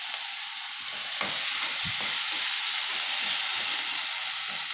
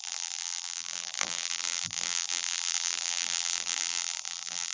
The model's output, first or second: second